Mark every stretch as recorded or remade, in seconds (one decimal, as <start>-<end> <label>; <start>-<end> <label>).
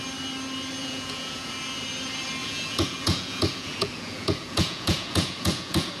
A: 0.0-0.8 recorded; 0.8-1.5 remade; 1.5-2.4 recorded; 2.4-6.0 remade